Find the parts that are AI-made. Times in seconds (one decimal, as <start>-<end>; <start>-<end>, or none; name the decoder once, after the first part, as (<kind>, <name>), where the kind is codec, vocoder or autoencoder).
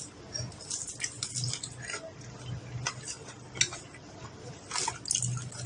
none